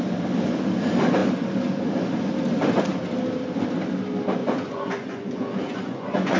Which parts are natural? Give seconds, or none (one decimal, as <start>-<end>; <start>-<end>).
0.0-4.4